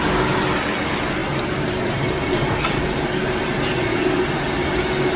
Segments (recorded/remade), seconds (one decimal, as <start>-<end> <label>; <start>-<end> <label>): 0.0-1.2 recorded; 1.2-4.3 remade; 4.3-5.2 recorded